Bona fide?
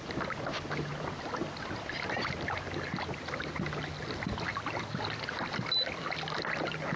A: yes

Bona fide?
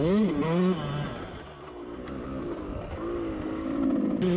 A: yes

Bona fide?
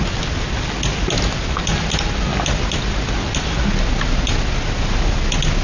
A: yes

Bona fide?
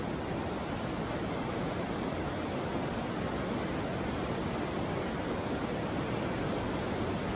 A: yes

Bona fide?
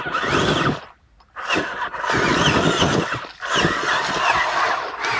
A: yes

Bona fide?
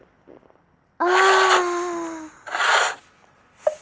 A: yes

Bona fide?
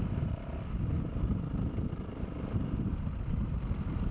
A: yes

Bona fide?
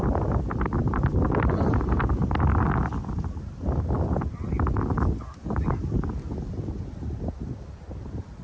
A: yes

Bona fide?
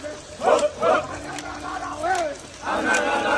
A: yes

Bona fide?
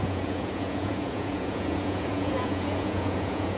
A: no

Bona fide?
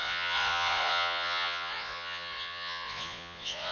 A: no